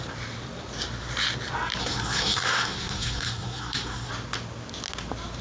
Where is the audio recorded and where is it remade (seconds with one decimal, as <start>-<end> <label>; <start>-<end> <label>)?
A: 0.0-1.8 recorded; 1.8-4.1 remade; 4.1-5.4 recorded